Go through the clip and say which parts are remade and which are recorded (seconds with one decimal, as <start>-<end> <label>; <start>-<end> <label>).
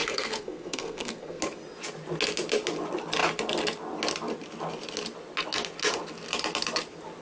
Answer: 0.0-1.4 remade; 1.4-7.2 recorded